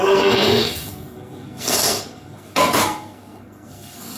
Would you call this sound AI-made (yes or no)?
yes